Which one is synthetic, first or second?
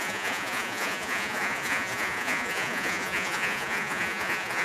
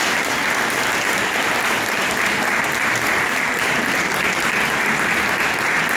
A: first